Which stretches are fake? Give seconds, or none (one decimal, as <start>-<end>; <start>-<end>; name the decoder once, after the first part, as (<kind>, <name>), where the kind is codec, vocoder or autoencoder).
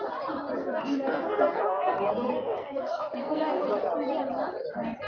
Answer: 0.6-3.7 (codec, SNAC)